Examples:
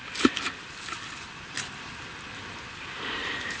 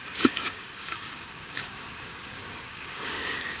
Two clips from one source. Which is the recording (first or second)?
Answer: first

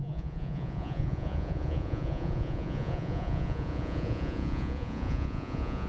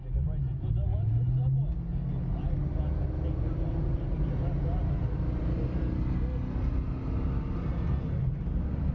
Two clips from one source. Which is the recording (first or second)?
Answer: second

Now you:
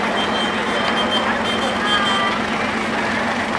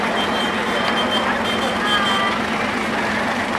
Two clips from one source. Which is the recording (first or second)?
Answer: first